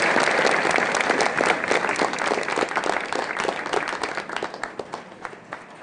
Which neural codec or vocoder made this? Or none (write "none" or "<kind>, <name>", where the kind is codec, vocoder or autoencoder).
none